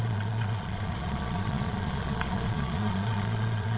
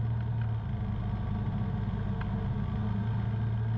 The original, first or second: second